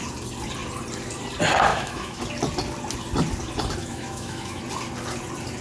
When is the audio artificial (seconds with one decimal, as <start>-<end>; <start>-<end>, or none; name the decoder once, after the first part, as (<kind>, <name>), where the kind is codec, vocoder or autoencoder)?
1.7-2.2 (autoencoder, DAC-VAE); 3.8-4.6